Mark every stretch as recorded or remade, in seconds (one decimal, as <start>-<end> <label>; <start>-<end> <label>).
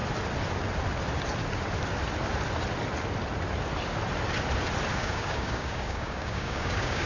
0.0-4.9 recorded; 4.9-7.1 remade